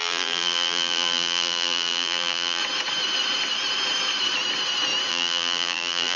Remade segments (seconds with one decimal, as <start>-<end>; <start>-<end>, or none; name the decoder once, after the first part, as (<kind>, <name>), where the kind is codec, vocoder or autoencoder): 0.0-2.6 (vocoder, BigVGAN v2); 5.1-6.2